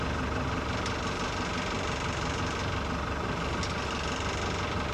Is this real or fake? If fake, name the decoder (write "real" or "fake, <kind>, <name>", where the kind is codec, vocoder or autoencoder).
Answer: real